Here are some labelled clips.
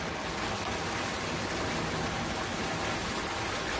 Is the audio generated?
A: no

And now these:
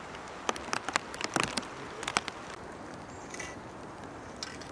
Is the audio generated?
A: no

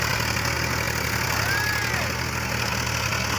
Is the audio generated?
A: no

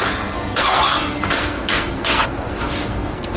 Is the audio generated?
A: yes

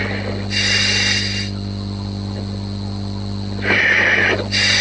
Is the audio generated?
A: no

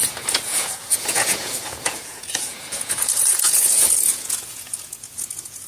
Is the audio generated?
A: yes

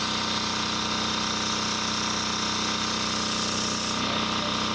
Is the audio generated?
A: no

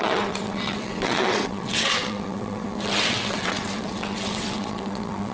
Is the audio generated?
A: yes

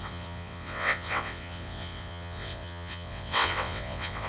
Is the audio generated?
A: yes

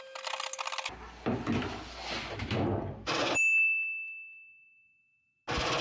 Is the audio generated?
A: no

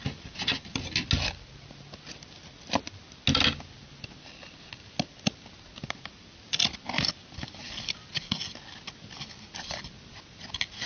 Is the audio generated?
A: no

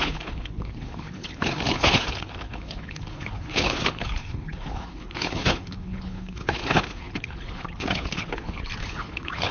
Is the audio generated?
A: yes